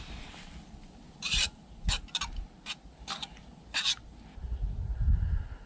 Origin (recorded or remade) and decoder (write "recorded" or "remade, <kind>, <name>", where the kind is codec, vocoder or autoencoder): recorded